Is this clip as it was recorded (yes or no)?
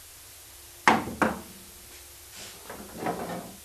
yes